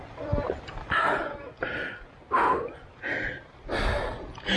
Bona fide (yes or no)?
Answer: yes